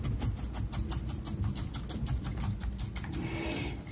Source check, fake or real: real